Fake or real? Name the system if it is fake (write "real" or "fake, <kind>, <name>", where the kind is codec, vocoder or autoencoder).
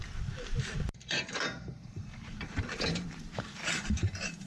fake, vocoder, BigVGAN v2